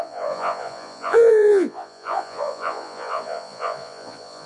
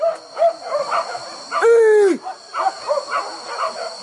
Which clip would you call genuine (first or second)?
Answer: second